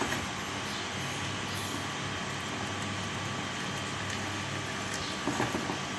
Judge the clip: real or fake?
real